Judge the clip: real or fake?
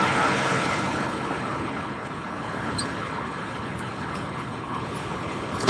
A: fake